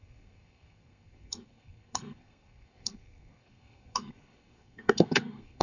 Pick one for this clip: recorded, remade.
remade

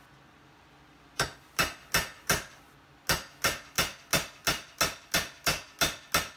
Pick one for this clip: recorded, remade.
recorded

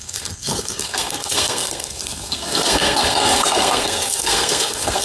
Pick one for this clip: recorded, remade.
remade